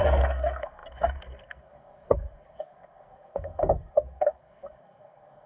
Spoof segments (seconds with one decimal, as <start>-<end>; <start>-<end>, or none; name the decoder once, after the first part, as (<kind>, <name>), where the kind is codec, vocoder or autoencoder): 0.0-5.5 (codec, SNAC)